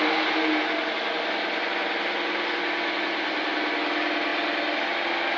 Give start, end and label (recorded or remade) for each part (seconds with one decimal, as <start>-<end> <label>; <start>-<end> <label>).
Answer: 0.0-5.4 recorded